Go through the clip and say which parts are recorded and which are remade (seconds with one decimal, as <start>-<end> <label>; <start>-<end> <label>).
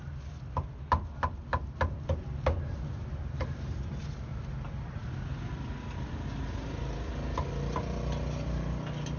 0.0-9.2 recorded